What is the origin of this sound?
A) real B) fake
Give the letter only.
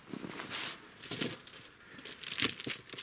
A